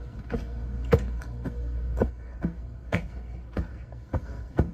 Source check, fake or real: fake